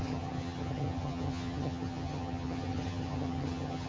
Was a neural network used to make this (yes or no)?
yes